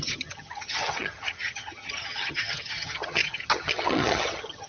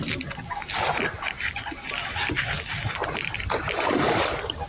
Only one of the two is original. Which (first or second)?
second